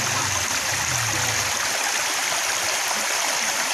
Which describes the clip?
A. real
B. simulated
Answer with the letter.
A